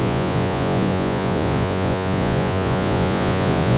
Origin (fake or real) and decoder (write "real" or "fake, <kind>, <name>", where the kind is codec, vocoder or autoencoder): fake, vocoder, Vocos